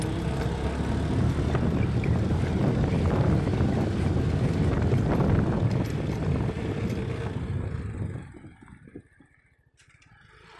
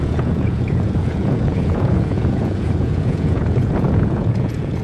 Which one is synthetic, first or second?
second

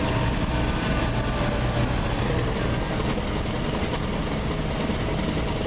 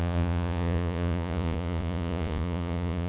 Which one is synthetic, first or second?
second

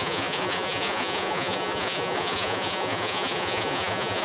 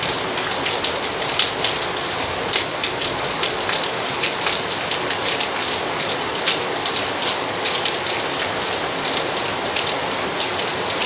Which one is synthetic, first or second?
first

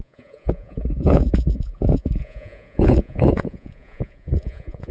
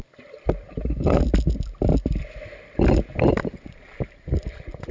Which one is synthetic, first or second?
first